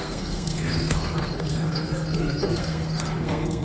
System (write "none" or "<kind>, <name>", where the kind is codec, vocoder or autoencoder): codec, SNAC